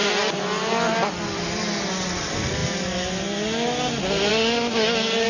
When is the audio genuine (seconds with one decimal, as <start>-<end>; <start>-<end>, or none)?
0.0-5.3